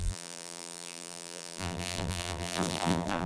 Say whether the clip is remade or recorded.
remade